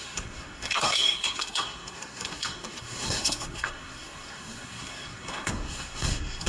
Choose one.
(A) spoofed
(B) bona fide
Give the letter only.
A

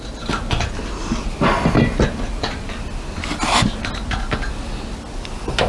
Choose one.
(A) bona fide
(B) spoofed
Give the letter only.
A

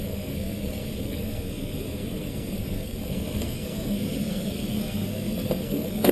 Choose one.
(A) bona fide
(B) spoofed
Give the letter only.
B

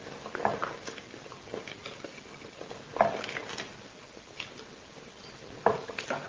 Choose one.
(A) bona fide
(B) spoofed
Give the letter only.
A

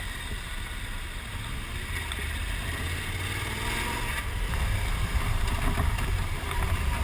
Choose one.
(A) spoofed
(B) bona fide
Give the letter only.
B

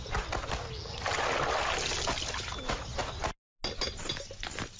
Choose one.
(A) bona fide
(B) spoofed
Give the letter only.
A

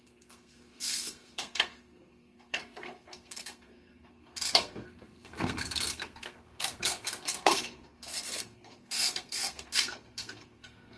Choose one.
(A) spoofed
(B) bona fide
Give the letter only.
A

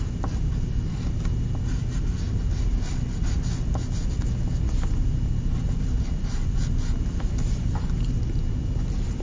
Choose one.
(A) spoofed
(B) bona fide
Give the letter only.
B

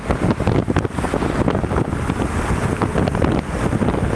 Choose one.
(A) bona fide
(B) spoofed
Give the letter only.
A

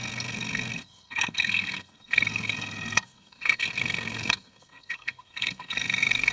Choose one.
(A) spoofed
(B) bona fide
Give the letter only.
A